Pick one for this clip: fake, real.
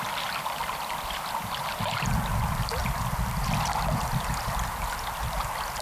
real